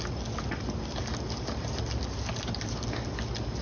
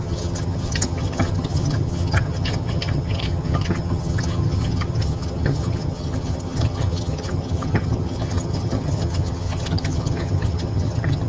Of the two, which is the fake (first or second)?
second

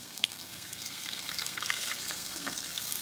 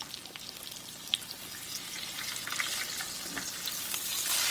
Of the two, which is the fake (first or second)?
first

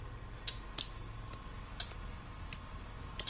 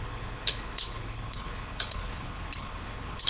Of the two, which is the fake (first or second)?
second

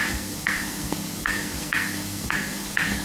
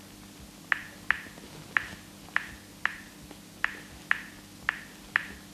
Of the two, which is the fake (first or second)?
first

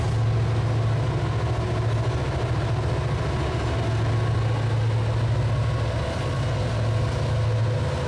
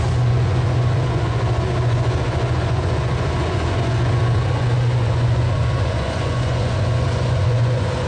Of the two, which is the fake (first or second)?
second